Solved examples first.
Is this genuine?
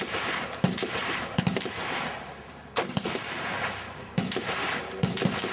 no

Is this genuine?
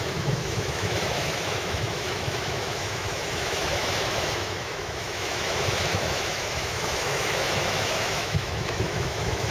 no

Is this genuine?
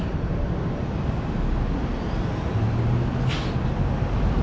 yes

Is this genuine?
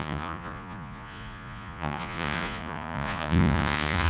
no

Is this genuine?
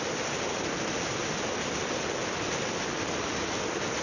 yes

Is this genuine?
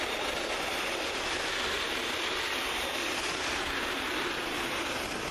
yes